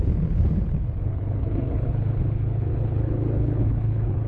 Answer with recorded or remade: remade